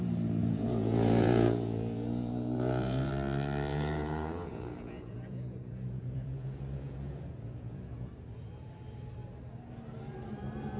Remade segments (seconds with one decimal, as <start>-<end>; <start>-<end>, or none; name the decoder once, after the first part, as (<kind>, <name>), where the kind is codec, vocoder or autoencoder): 0.4-3.1 (vocoder, Vocos); 3.7-8.1